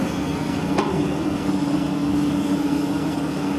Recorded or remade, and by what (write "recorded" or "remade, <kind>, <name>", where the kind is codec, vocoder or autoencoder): remade, codec, SNAC